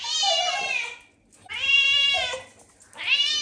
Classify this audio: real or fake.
real